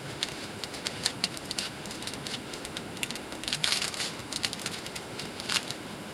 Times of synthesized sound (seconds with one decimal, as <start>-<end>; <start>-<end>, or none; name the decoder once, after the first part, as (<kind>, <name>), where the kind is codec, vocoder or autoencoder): 0.0-6.1 (autoencoder, DAC-VAE)